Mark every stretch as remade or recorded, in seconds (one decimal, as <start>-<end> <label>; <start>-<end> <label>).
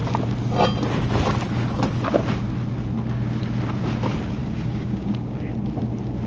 0.0-4.4 recorded; 4.4-5.5 remade; 5.5-6.3 recorded